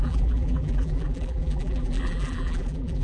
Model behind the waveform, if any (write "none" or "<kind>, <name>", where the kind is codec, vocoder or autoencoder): vocoder, BigVGAN v2